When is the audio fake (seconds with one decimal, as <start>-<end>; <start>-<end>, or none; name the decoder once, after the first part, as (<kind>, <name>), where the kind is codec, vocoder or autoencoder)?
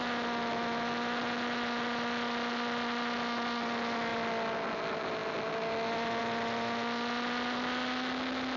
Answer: none